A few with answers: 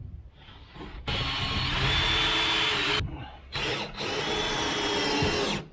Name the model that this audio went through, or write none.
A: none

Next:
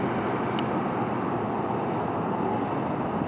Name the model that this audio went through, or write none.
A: none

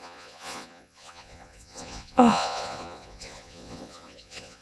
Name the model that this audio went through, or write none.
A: vocoder, Vocos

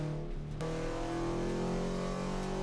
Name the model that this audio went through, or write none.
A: none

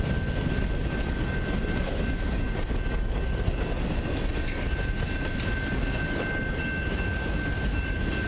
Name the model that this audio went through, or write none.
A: none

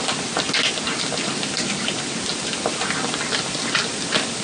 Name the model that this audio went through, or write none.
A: none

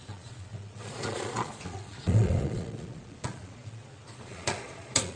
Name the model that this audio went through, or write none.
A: vocoder, Vocos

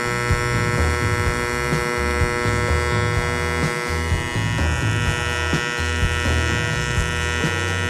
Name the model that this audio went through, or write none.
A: none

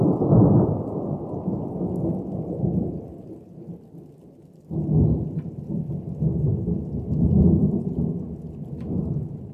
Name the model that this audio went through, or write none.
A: none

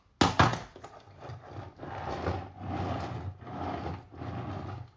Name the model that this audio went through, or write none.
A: none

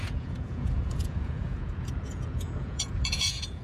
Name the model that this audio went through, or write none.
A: vocoder, Vocos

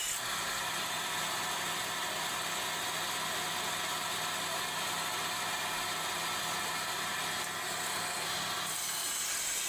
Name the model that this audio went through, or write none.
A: none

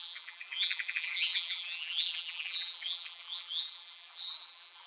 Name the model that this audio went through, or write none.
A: vocoder, BigVGAN v2